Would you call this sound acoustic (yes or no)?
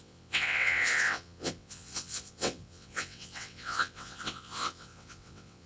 no